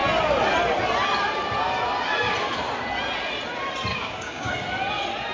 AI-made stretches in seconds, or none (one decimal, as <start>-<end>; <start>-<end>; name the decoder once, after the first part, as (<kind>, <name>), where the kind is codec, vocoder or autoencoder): 3.9-4.5 (codec, DAC)